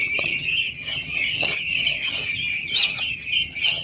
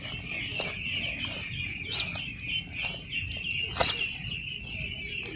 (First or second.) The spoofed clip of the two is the first